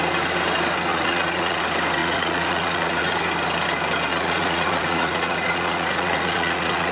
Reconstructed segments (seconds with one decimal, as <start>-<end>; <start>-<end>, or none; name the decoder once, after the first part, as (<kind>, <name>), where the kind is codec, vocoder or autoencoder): 0.9-1.6 (vocoder, Vocos); 2.0-3.2; 4.1-6.9